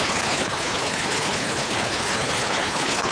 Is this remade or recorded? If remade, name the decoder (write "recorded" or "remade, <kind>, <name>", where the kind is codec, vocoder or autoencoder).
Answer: remade, codec, HILCodec